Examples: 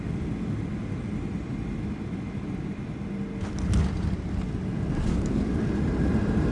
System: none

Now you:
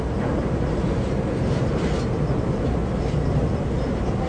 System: none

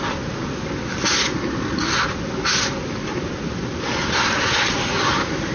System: none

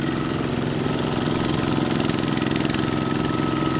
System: none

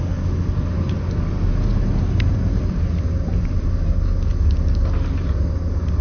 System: none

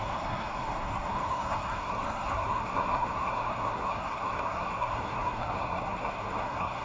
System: codec, SNAC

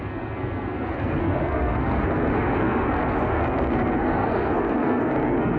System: codec, SNAC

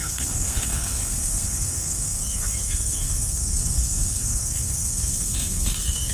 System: codec, SNAC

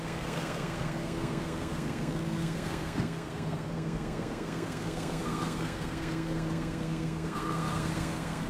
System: codec, SNAC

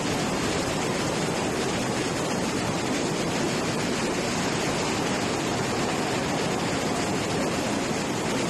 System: none